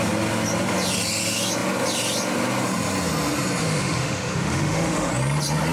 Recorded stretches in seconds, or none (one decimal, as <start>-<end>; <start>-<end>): 0.0-3.6; 5.1-5.7